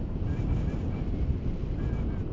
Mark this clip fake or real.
real